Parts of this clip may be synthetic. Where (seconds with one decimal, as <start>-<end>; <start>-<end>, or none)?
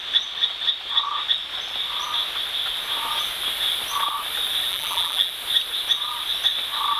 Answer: 4.7-5.3